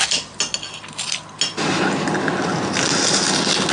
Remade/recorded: recorded